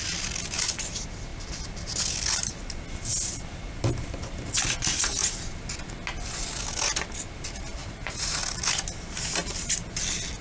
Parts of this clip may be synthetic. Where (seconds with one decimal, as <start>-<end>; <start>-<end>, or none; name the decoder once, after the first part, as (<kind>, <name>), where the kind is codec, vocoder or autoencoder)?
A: 7.8-8.4 (vocoder, Vocos)